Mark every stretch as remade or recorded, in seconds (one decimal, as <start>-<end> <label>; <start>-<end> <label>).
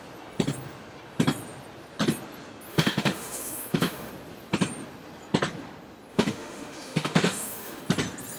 0.0-2.7 recorded; 2.7-4.1 remade; 4.1-6.1 recorded; 6.1-7.8 remade; 7.8-8.4 recorded